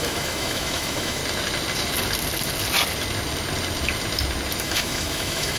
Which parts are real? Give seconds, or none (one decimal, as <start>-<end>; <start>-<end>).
1.2-4.6